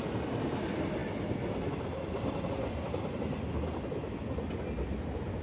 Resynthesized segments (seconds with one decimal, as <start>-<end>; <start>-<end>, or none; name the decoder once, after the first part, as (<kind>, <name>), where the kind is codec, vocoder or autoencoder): none